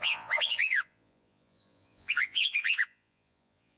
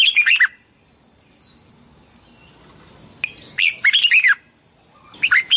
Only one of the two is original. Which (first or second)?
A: second